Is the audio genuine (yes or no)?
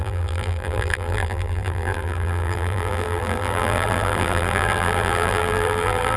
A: no